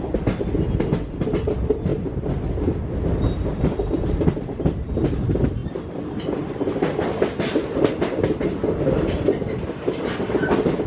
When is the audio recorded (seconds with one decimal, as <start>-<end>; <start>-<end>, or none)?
0.0-10.9